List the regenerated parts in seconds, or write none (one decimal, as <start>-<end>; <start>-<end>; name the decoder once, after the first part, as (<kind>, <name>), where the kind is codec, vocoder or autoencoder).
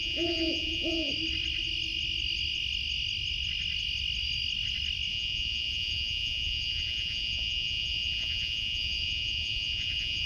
0.0-1.1 (vocoder, Vocos); 5.1-10.3